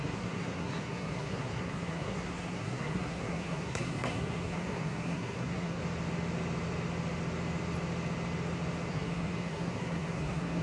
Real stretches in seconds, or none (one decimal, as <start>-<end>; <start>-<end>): 5.8-8.9